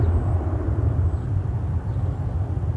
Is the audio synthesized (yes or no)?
no